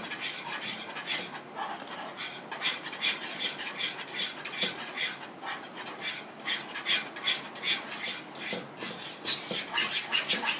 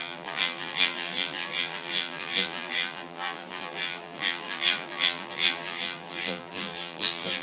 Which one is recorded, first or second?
first